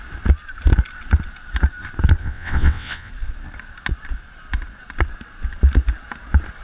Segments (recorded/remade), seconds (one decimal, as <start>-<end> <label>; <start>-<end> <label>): 0.0-2.2 recorded; 2.2-3.1 remade; 3.1-6.6 recorded